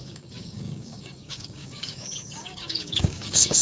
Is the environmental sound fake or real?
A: fake